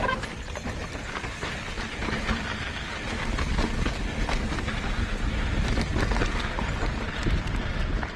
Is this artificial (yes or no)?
no